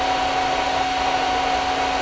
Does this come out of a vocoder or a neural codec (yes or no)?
no